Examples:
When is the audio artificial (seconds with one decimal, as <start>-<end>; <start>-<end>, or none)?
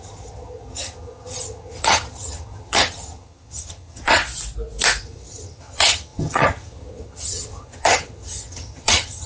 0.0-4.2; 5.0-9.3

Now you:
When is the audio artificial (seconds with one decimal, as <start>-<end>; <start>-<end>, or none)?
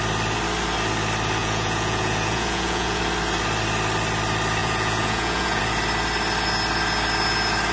1.4-3.0; 4.6-5.6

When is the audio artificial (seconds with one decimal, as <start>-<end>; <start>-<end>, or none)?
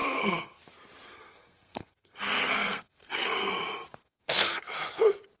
0.0-0.6; 1.1-3.5; 4.0-4.6